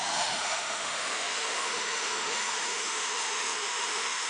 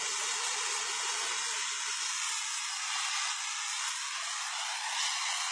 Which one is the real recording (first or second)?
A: second